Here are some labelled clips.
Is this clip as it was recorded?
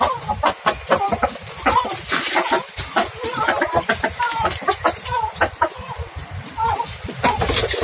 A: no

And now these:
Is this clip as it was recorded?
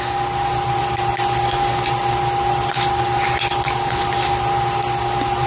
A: yes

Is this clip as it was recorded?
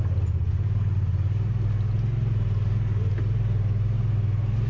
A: yes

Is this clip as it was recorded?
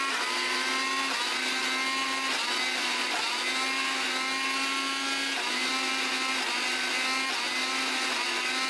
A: yes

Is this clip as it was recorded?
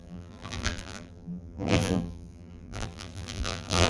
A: no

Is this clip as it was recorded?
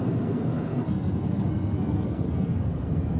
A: no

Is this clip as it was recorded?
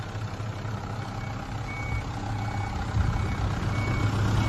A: yes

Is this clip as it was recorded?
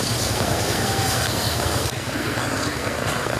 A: no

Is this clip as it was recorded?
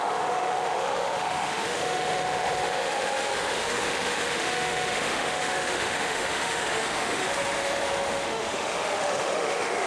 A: no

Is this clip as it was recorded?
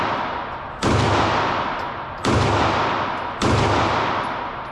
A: yes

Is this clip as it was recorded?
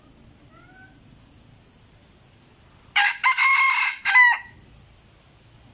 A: yes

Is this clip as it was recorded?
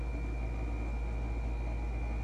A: yes